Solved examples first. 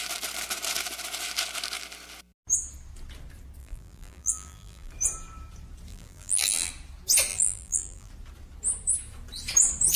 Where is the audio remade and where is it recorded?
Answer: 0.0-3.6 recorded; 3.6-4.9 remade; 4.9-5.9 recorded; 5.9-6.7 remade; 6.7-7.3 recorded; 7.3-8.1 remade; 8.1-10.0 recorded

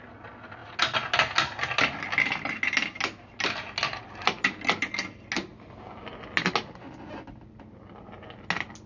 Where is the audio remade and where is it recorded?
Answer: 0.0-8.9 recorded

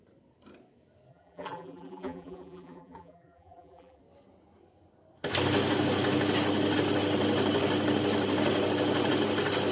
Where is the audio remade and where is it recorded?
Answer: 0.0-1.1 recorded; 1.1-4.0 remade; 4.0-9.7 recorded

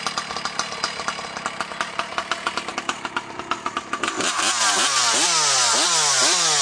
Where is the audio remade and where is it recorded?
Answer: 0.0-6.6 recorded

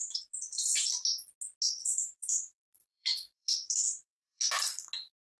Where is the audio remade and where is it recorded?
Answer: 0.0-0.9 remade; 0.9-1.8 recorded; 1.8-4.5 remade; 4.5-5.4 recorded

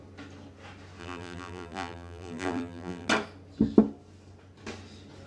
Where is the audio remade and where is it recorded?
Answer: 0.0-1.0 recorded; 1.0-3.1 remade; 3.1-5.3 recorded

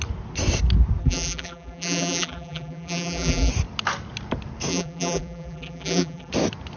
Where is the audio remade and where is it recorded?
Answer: 0.0-1.0 recorded; 1.0-3.5 remade; 3.5-4.7 recorded; 4.7-6.3 remade; 6.3-6.8 recorded